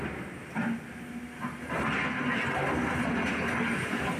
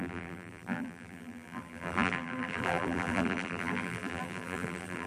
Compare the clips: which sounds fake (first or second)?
second